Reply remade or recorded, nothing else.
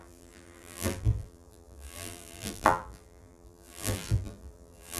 remade